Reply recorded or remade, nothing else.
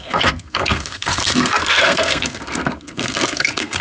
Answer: remade